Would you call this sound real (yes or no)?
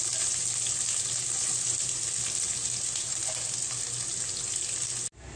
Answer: yes